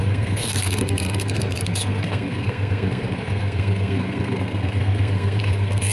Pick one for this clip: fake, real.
fake